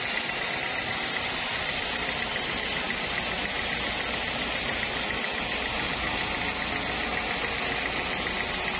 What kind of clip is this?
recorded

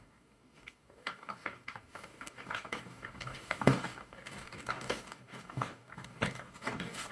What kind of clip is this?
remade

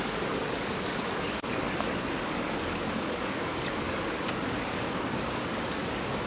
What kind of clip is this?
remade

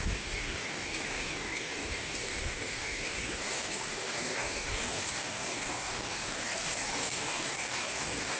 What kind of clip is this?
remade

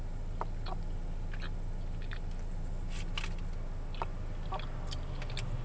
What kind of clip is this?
recorded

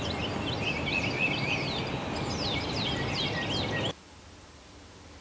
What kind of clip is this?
recorded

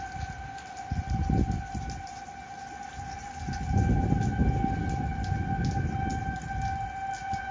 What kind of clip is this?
recorded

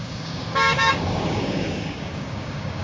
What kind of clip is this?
remade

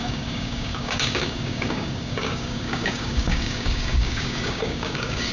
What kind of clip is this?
remade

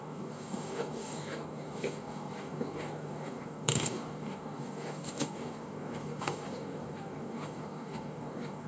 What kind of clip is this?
remade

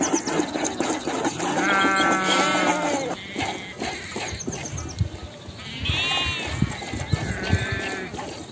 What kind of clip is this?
recorded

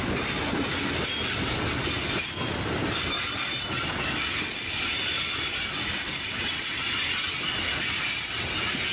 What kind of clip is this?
recorded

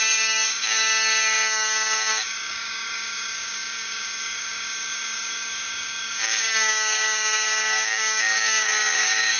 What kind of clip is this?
remade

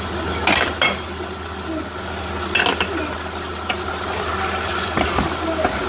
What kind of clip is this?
recorded